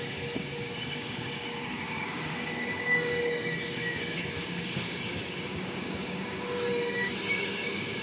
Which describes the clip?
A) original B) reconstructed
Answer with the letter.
B